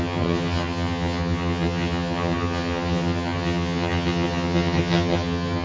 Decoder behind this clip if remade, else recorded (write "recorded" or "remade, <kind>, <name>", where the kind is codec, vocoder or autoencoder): remade, vocoder, HiFi-GAN